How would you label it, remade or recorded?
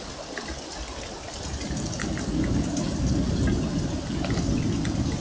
recorded